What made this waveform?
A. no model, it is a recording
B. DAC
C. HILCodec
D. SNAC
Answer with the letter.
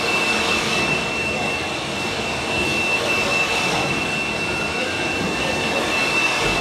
B